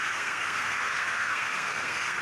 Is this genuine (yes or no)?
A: no